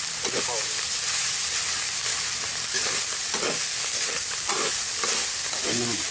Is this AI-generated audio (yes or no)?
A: no